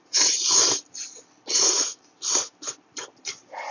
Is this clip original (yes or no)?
yes